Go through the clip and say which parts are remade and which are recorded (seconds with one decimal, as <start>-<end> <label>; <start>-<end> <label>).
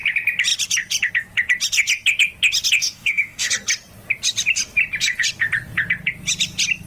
0.0-2.8 recorded; 2.8-3.5 remade; 3.5-6.9 recorded